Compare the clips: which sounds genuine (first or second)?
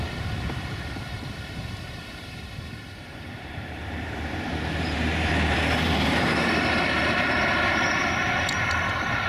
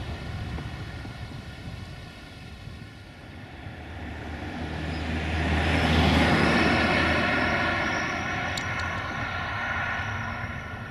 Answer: second